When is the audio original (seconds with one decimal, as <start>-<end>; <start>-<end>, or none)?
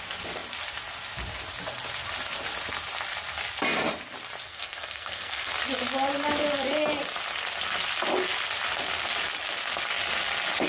0.0-4.5; 5.5-10.7